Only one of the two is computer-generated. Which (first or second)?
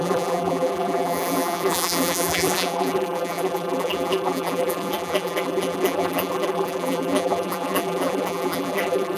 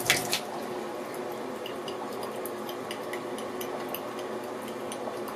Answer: first